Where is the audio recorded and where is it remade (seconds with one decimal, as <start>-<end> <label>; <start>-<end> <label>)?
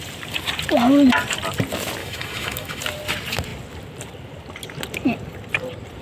0.0-2.0 recorded; 2.0-2.8 remade; 2.8-6.0 recorded